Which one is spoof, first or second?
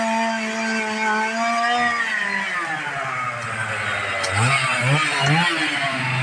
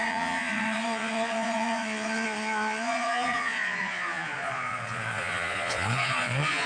second